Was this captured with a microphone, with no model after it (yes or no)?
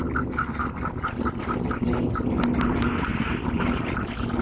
yes